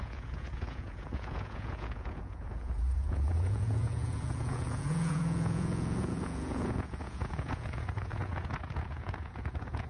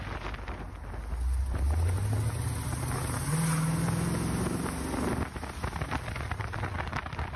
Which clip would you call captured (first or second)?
second